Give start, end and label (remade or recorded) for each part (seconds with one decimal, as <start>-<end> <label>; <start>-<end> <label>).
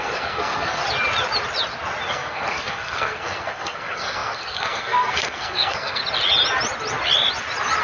0.0-0.8 remade; 0.8-2.1 recorded; 2.1-6.0 remade; 6.0-7.8 recorded